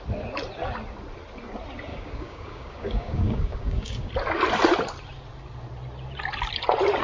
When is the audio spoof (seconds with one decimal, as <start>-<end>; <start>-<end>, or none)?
1.9-4.1